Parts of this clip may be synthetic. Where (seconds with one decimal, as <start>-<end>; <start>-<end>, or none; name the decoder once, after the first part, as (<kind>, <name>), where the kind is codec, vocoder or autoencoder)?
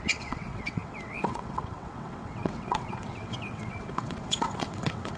0.0-5.2 (vocoder, WaveNeXt)